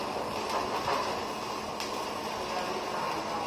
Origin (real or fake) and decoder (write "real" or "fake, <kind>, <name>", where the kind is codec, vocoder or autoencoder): real